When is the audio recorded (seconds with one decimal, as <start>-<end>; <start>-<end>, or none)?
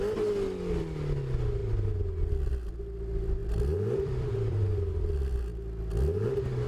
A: 0.0-3.4; 5.1-6.7